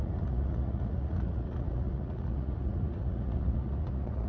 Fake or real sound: fake